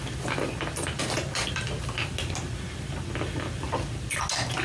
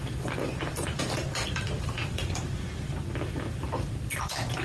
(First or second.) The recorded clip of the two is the first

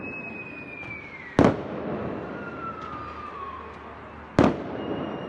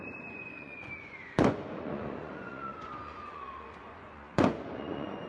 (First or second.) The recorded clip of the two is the first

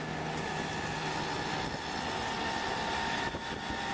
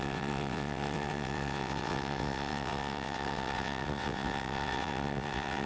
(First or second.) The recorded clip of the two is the first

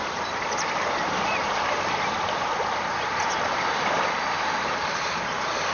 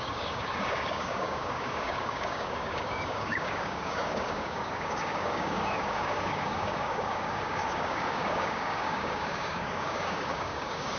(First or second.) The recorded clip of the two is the first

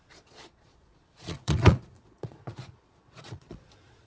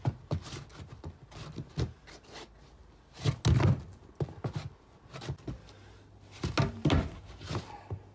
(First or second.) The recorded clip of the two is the second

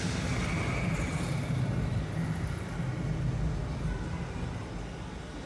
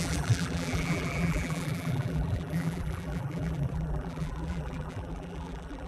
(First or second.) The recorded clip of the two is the first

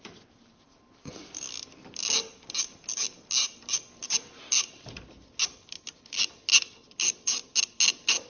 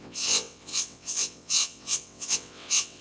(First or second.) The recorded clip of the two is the first